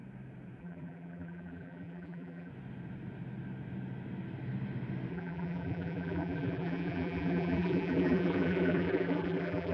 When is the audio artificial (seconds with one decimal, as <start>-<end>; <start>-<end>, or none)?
0.6-2.5; 5.1-9.7